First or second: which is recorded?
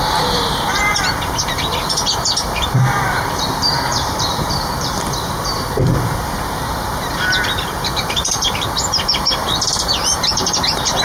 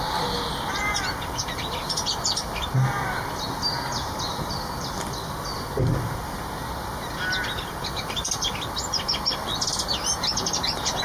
second